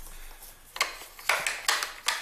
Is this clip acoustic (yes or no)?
yes